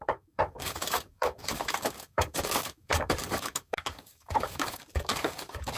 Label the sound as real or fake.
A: fake